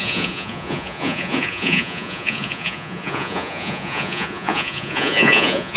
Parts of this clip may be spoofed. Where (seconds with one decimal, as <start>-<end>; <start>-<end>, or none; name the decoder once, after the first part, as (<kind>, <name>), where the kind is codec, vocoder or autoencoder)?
0.0-5.8 (vocoder, Vocos)